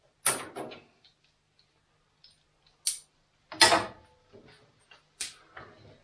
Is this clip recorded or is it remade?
recorded